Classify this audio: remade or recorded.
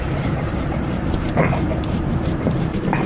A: remade